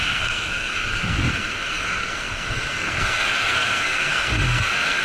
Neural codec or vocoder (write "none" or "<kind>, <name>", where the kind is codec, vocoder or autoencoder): codec, SNAC